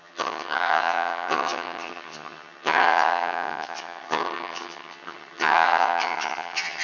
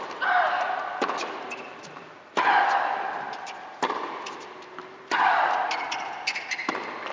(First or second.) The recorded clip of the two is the second